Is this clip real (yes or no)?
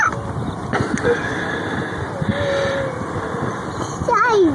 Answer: yes